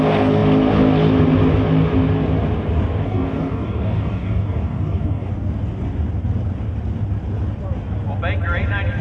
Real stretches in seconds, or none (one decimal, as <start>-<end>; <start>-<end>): 0.0-3.0; 5.3-9.0